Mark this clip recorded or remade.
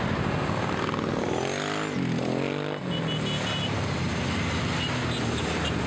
recorded